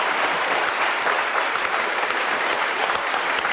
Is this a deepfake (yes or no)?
no